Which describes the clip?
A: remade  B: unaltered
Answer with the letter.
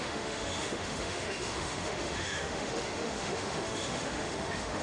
A